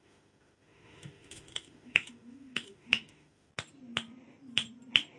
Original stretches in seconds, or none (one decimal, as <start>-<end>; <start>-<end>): 3.5-5.2